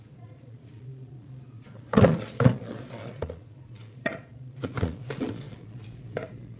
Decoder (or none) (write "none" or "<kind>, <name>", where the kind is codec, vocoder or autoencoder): vocoder, Vocos